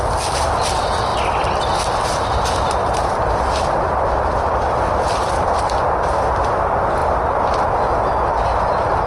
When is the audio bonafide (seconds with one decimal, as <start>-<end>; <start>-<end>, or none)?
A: none